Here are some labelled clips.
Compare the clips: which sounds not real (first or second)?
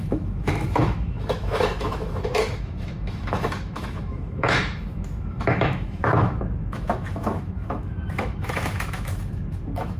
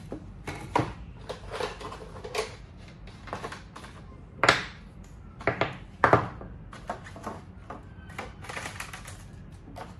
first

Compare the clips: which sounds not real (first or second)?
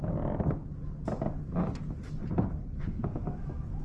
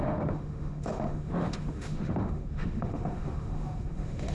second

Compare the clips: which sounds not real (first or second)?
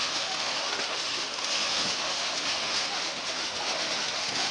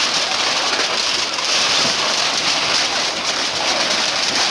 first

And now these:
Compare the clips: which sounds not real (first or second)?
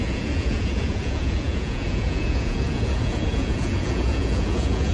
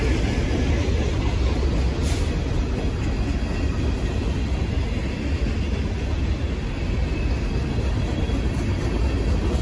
first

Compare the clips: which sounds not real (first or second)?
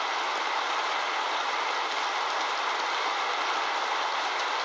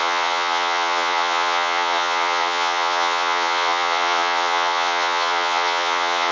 second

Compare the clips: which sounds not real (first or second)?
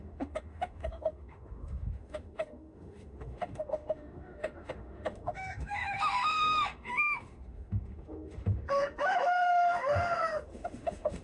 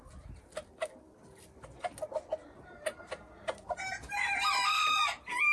first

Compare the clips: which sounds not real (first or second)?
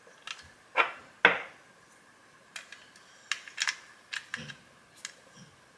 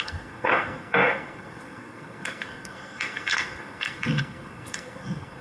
second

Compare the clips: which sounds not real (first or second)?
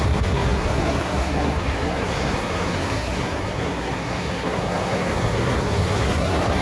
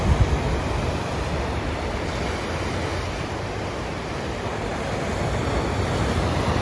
first